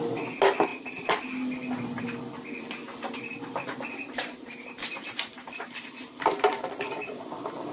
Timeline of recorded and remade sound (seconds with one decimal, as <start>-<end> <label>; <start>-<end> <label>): 0.0-2.8 recorded; 2.8-6.7 remade; 6.7-7.7 recorded